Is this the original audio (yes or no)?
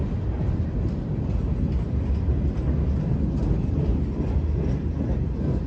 yes